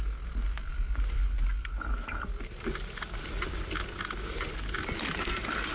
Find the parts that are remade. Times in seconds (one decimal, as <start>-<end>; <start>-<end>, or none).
none